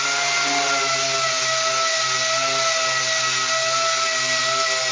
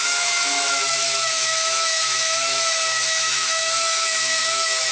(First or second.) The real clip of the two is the first